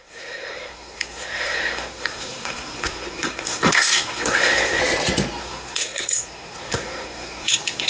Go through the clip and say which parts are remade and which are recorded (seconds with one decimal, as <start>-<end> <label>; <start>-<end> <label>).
0.0-4.8 remade; 4.8-5.4 recorded; 5.4-7.9 remade